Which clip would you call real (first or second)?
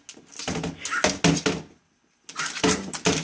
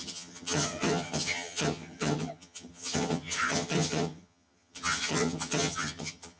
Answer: first